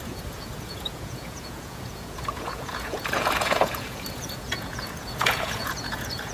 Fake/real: fake